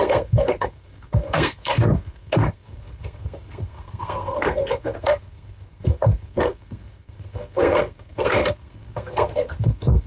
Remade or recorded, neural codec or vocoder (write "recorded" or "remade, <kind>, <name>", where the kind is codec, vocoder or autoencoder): remade, codec, SNAC